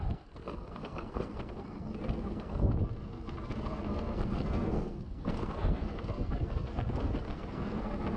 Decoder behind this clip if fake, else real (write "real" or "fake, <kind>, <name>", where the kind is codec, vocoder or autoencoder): fake, codec, SNAC